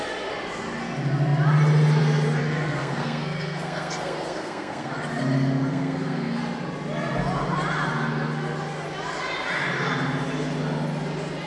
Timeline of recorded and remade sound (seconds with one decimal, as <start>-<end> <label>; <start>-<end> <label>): 0.0-2.4 recorded; 2.4-4.9 remade; 4.9-5.7 recorded; 5.7-6.4 remade; 6.4-11.5 recorded